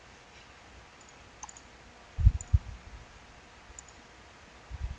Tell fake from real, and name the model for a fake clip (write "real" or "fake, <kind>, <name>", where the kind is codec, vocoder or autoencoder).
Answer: real